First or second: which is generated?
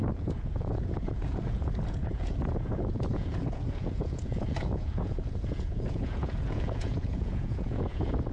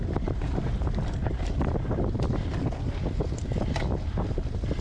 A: first